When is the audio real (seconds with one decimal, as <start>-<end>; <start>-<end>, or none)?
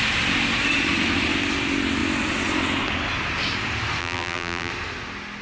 0.0-4.0; 4.7-5.4